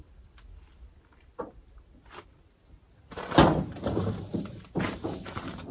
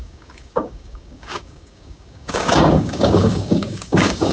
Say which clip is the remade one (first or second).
second